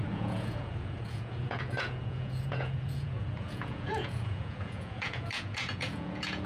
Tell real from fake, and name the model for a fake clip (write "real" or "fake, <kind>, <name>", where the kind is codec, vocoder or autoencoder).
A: fake, vocoder, Vocos